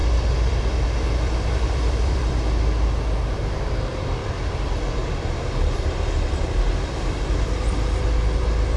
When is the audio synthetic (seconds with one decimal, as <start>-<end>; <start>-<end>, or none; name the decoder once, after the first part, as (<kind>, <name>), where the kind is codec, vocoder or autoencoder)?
0.0-2.3 (vocoder, BigVGAN v2); 4.2-8.0